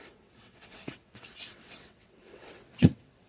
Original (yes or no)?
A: no